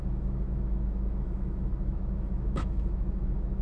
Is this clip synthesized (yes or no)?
yes